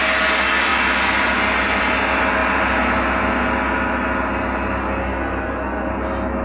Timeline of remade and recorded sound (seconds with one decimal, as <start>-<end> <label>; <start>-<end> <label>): 0.0-5.0 recorded; 5.0-5.9 remade; 5.9-6.4 recorded